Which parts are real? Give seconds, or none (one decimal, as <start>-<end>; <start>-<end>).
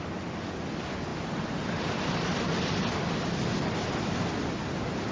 0.0-5.1